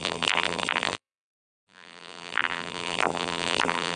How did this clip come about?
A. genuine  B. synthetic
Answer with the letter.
B